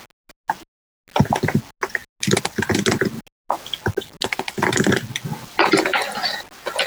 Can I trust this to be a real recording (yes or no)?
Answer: yes